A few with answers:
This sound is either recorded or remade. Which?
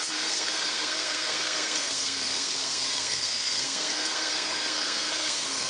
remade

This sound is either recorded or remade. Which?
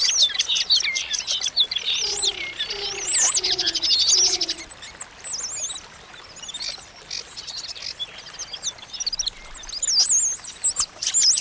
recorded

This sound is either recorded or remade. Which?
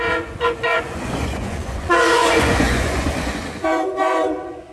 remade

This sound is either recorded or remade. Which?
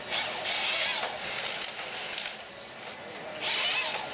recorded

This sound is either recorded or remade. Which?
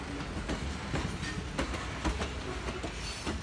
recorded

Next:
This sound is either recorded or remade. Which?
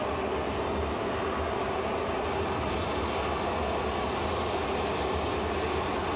recorded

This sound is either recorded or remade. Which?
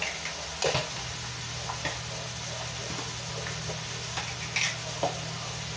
recorded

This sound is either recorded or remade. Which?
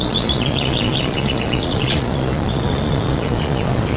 remade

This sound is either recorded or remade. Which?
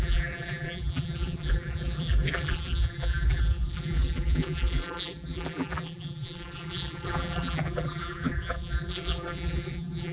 remade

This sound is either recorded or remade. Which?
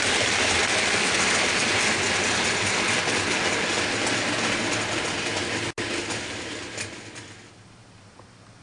recorded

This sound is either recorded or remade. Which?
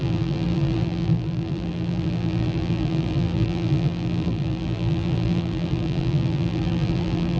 remade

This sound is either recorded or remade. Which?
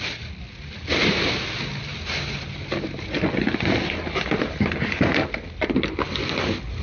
recorded